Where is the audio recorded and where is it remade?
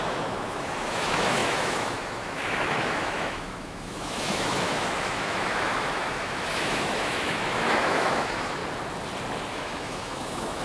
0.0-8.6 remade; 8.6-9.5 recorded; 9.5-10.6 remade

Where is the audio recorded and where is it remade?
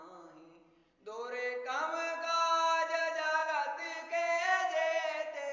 0.0-3.4 recorded; 3.4-5.5 remade